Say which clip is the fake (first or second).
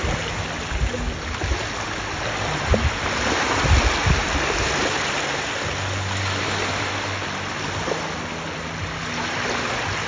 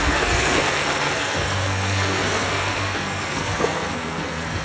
second